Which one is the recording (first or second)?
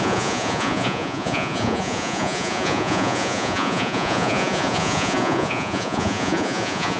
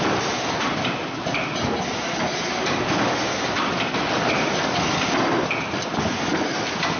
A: second